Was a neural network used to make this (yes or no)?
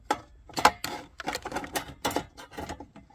no